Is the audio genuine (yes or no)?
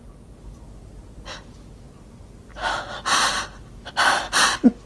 yes